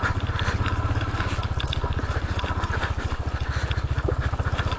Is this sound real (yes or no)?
yes